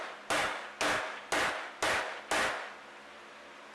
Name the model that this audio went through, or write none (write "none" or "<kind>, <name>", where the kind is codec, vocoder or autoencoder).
none